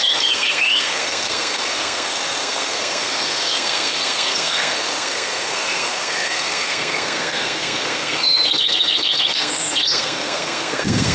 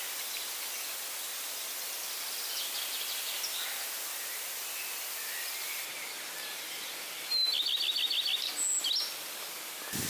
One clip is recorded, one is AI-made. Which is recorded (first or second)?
second